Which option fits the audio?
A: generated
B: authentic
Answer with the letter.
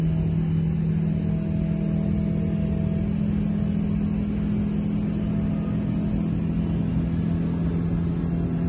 B